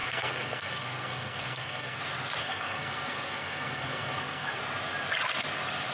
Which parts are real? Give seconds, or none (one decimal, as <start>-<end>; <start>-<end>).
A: 2.0-2.4; 4.6-5.9